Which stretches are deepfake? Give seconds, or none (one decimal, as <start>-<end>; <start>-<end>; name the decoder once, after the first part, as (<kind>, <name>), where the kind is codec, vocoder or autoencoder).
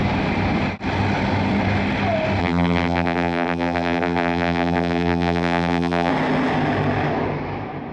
2.4-6.1 (vocoder, BigVGAN v2)